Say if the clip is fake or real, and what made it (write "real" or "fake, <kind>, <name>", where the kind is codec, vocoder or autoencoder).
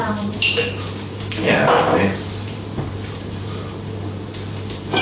fake, vocoder, BigVGAN v2